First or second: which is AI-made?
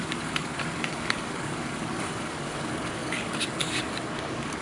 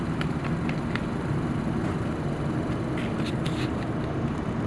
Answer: first